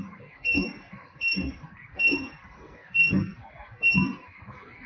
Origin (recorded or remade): remade